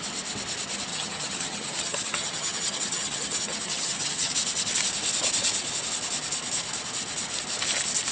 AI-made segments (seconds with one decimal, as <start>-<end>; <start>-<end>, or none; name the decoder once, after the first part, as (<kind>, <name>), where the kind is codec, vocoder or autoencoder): 0.9-4.3 (vocoder, HiFi-GAN)